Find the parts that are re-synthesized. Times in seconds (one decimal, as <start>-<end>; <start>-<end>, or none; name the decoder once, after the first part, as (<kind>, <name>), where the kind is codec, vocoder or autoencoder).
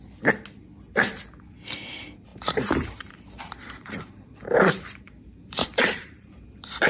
2.3-6.4 (vocoder, BigVGAN v2)